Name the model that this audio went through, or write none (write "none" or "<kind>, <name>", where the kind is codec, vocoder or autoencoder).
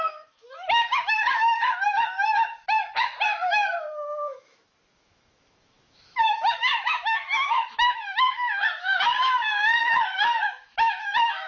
autoencoder, DAC-VAE